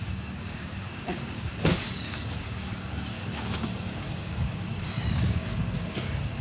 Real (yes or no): no